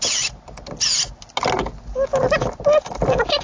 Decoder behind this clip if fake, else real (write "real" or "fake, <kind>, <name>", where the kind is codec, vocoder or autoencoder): real